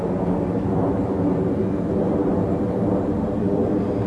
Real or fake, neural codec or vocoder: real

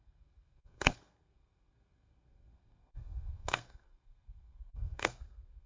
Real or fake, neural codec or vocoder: fake, codec, SNAC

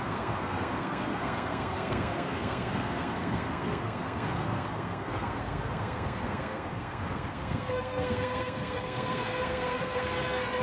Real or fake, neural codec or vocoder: fake, codec, SNAC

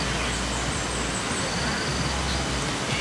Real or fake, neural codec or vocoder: real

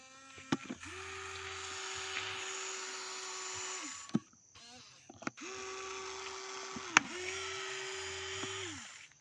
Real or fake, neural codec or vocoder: real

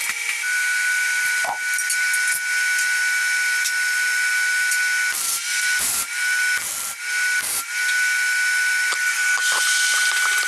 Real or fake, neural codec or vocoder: real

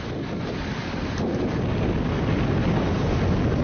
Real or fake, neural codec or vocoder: real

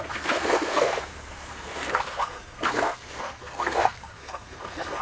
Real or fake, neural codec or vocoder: fake, codec, SNAC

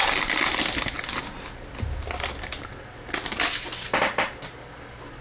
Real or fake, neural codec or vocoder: real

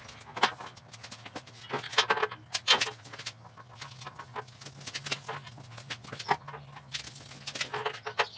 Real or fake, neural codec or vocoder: real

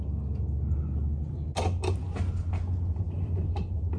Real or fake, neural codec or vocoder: real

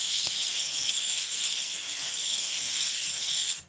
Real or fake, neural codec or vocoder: fake, codec, SNAC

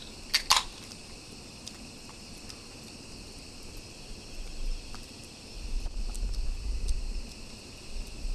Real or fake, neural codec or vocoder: real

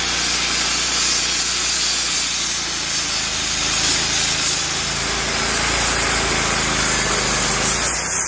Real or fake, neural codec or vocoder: real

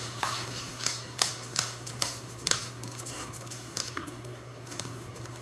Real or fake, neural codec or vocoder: fake, codec, SNAC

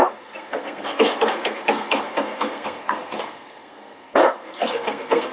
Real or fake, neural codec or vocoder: fake, codec, SNAC